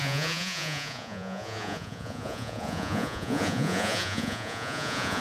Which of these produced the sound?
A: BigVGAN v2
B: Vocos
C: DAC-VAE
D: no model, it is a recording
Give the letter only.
B